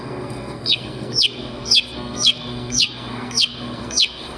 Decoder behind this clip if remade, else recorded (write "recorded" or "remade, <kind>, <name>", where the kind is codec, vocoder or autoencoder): remade, codec, SNAC